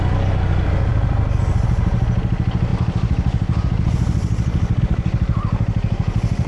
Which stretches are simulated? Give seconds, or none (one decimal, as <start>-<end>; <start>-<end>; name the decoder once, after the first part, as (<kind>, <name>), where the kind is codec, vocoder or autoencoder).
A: none